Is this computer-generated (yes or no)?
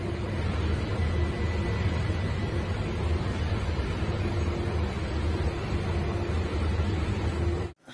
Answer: no